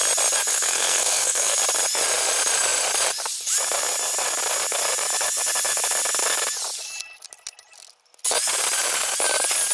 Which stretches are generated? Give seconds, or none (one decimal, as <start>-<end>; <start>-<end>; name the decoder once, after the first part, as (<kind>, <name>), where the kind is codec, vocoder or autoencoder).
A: 0.5-1.6 (codec, SNAC)